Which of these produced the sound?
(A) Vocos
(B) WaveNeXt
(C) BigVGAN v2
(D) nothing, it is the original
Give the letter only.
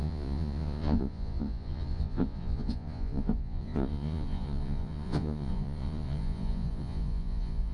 A